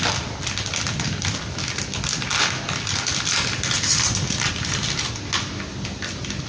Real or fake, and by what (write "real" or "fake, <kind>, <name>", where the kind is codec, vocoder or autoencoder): real